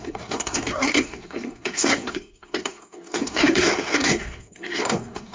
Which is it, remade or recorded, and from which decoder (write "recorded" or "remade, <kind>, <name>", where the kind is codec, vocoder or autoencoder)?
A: remade, codec, SNAC